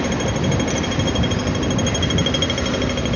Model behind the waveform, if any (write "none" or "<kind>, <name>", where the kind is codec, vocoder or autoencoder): none